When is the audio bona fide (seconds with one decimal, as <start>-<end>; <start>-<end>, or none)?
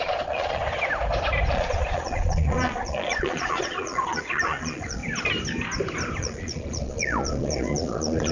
0.6-1.5; 5.0-6.2